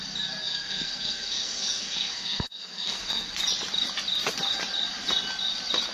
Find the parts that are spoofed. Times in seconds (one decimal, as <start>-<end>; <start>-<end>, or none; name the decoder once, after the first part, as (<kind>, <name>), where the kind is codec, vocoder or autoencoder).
0.4-3.3 (codec, SNAC)